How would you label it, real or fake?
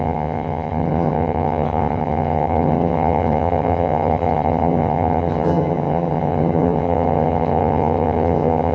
fake